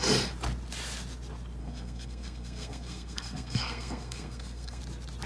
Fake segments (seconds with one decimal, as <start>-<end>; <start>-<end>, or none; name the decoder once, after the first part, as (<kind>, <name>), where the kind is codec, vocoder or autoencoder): 1.6-4.8 (codec, SNAC)